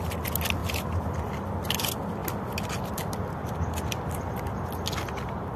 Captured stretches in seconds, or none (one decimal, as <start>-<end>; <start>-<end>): 0.0-5.6